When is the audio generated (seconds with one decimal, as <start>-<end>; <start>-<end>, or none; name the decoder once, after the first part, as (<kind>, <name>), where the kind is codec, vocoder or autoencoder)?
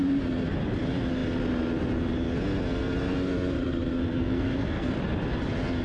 4.2-4.9 (codec, SNAC)